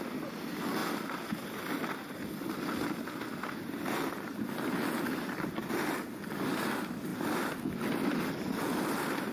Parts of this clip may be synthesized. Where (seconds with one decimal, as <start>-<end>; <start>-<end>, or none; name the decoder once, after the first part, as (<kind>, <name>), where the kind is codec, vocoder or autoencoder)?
none